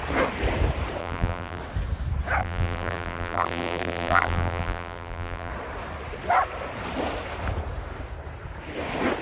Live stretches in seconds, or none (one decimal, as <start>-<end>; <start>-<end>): 0.0-1.0; 1.6-2.4; 5.5-9.2